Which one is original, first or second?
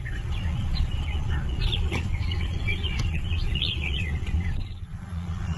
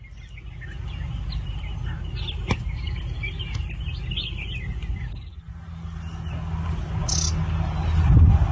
second